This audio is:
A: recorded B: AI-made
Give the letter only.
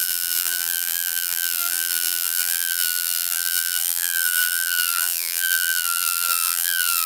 B